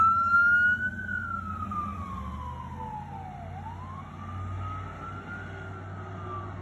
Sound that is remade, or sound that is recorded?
recorded